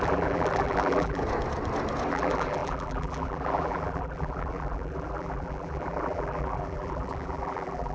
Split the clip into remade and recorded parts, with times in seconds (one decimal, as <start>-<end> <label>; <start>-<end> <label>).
0.0-1.2 remade; 1.2-2.1 recorded; 2.1-7.9 remade